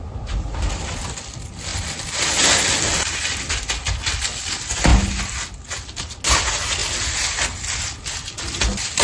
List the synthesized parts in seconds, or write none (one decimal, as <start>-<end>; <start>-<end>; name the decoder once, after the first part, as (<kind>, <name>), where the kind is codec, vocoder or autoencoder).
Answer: none